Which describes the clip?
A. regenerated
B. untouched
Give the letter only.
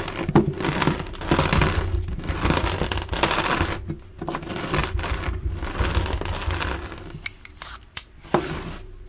B